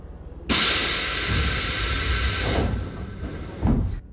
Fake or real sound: real